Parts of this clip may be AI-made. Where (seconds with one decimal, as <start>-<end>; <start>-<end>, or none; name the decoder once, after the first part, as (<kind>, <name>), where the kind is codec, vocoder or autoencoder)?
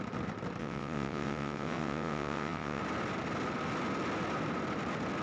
0.6-2.8 (vocoder, WaveNeXt)